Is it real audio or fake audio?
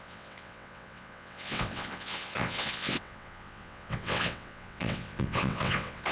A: fake